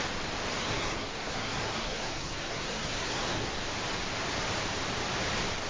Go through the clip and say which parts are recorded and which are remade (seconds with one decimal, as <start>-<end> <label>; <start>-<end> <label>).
0.0-0.6 recorded; 0.6-3.5 remade; 3.5-5.7 recorded